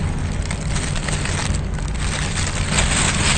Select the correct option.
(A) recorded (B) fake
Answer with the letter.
A